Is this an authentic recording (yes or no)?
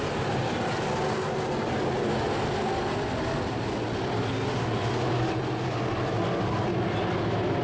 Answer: yes